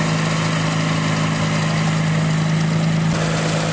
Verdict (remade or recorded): recorded